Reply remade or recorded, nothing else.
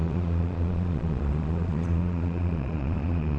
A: remade